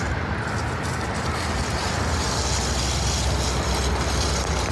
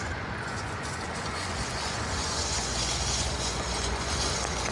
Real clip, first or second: first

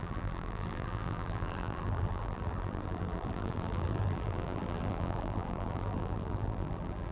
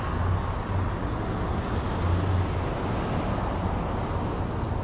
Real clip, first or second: second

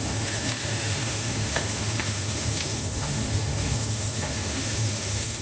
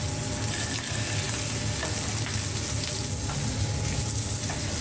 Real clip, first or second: second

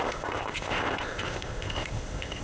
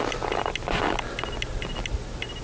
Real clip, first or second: second